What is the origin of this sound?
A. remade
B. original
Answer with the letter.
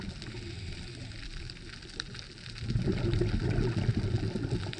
B